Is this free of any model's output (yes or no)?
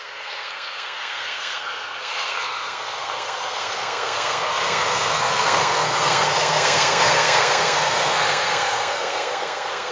no